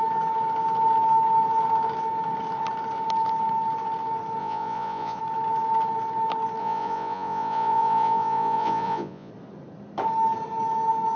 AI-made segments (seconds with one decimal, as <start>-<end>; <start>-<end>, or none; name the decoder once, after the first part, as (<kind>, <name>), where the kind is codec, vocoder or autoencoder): 4.4-5.2 (vocoder, Vocos); 6.6-9.3